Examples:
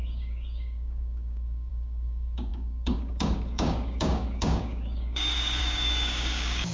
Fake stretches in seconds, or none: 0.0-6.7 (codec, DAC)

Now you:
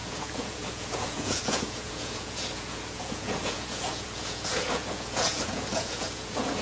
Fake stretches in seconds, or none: 0.0-6.6 (vocoder, Vocos)